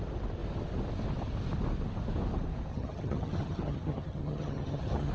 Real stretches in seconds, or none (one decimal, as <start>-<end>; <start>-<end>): 0.0-2.7